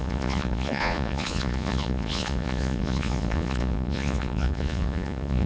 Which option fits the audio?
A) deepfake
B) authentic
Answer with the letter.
A